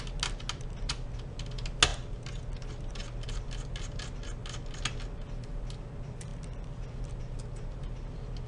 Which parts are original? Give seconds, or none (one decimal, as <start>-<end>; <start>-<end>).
0.0-8.5